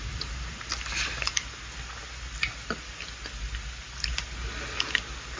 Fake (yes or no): no